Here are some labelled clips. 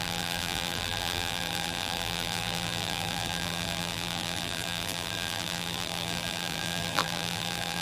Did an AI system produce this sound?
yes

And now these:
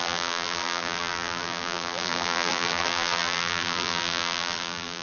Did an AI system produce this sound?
yes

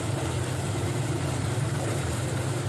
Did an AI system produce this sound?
yes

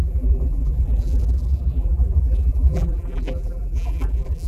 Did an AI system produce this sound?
yes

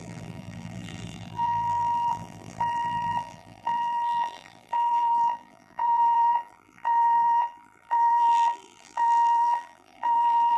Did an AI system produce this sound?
yes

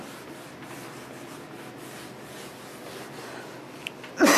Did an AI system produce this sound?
no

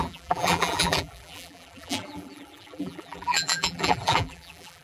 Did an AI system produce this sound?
yes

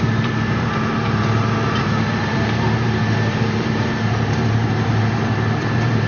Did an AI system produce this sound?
yes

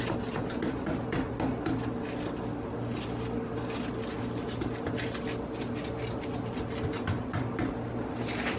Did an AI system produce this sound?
no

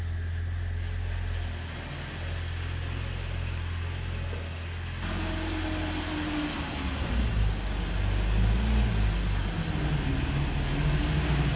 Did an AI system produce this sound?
no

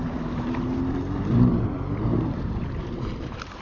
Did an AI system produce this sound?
yes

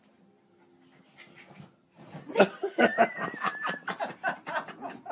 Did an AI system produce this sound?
no